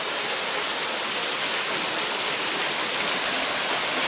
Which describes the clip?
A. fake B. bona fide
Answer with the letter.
B